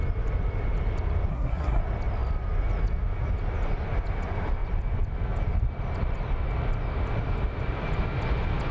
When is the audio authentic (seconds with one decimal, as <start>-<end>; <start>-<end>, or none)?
0.0-1.3; 1.8-8.7